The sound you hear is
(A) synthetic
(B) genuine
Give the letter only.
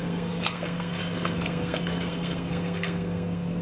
A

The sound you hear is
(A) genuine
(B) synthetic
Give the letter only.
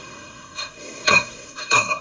B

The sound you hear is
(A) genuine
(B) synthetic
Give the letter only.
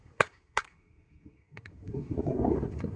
B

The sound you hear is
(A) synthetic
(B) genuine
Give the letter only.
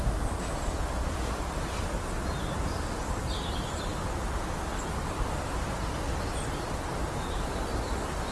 B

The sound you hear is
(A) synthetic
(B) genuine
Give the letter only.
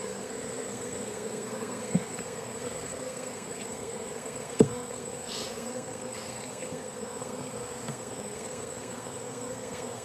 A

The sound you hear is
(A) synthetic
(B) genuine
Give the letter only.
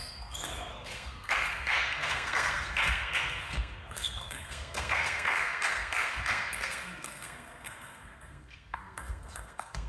A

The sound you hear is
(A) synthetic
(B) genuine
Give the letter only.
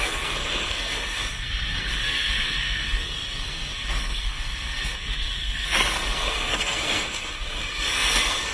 A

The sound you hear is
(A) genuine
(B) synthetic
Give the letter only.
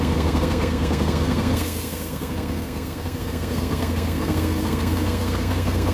B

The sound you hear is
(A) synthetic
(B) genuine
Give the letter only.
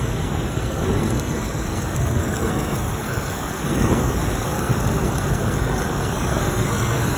A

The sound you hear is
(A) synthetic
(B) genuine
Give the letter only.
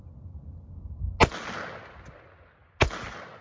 B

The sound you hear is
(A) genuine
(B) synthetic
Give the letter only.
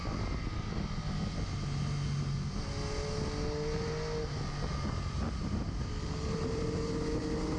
A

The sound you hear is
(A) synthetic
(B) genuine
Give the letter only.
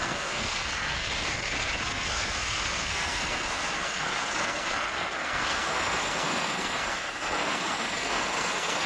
A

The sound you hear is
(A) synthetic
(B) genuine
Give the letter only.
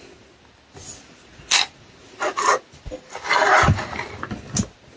B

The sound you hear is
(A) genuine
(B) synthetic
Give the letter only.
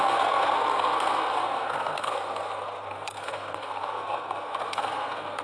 B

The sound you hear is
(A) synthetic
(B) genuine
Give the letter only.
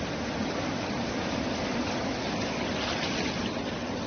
B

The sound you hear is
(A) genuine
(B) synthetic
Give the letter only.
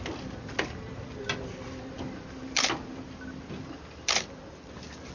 A